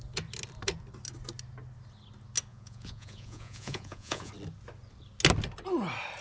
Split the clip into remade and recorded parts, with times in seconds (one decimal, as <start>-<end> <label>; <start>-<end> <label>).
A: 0.0-2.5 recorded; 2.5-4.3 remade; 4.3-6.2 recorded